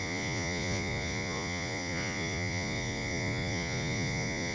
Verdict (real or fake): fake